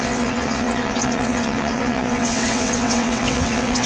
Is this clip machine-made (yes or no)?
yes